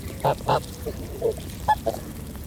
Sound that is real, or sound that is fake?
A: fake